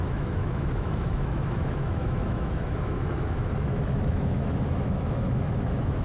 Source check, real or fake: fake